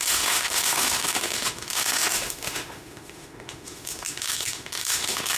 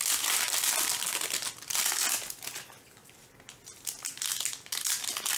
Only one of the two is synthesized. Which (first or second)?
first